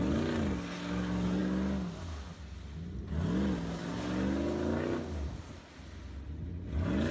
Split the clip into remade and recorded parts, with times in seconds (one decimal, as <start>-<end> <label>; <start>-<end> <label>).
0.0-7.1 recorded